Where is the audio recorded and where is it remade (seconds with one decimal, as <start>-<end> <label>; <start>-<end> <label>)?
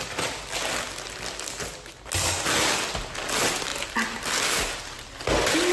0.0-5.7 recorded